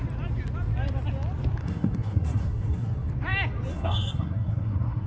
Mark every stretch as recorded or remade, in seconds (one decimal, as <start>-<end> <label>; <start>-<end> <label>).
0.0-1.6 recorded; 1.6-3.1 remade; 3.1-3.7 recorded; 3.7-5.1 remade